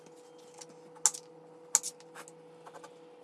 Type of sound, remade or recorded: recorded